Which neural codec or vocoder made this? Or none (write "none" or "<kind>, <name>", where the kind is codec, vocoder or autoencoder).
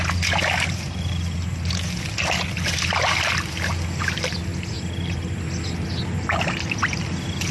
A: none